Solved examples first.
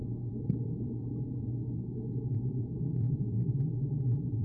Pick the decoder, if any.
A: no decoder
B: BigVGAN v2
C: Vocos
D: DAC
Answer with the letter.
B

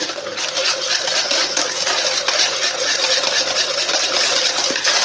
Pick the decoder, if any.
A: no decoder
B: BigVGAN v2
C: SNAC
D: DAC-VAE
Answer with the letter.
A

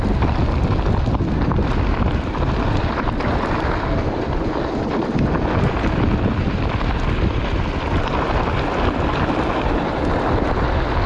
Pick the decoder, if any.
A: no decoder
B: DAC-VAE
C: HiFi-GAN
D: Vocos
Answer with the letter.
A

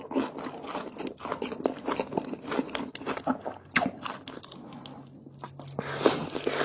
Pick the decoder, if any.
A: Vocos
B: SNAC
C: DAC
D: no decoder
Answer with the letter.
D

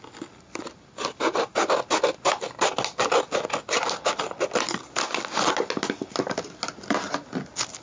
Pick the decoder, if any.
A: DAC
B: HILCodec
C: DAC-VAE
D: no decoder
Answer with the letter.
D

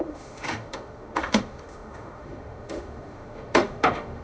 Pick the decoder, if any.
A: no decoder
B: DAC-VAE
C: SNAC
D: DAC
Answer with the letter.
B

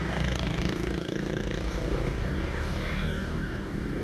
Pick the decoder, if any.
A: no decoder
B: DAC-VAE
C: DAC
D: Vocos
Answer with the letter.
C